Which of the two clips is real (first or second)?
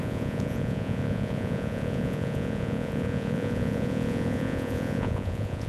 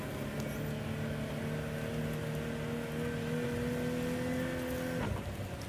second